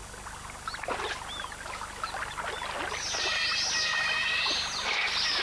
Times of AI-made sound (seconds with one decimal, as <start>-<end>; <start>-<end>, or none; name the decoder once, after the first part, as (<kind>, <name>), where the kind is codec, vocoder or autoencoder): none